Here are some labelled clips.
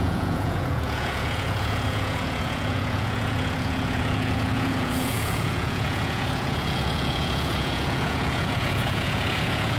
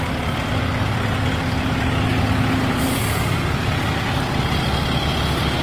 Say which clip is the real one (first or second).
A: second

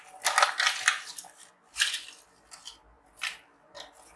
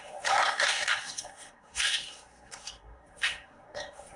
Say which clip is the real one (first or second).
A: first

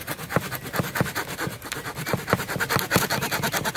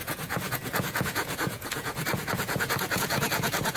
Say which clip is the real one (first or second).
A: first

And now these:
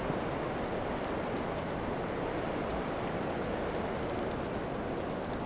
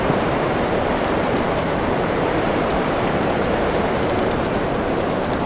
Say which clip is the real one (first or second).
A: first